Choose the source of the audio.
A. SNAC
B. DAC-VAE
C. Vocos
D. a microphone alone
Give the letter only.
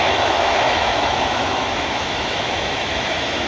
B